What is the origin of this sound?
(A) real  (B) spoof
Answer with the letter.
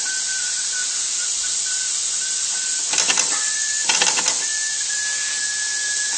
A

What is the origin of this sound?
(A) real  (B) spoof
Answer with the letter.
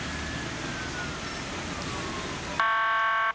A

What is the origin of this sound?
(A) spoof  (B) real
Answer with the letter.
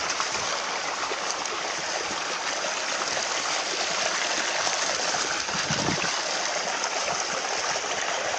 B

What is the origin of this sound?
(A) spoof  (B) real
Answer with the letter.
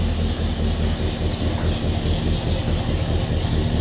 B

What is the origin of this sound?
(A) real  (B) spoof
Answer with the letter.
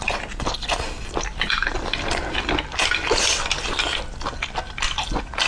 A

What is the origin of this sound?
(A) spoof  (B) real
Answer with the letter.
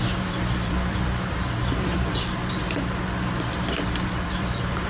A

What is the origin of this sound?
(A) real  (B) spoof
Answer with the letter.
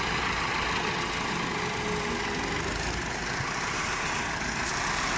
A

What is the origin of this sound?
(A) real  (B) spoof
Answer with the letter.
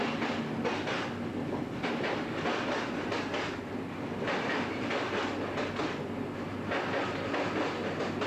A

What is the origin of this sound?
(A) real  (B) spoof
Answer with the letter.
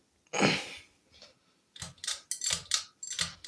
A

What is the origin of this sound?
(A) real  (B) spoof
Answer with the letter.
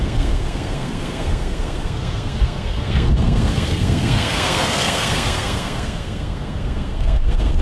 B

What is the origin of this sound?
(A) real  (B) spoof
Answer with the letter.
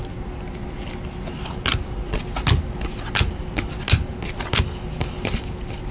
A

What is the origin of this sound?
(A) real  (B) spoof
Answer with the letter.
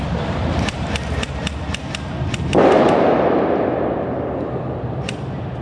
B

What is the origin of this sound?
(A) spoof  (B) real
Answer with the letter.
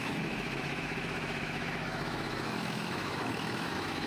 A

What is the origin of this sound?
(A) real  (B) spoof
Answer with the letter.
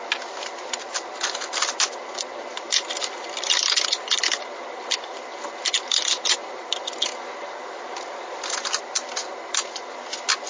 A